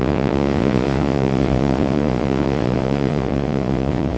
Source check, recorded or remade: remade